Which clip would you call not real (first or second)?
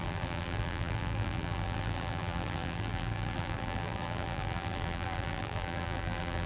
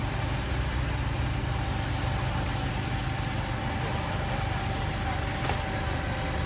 first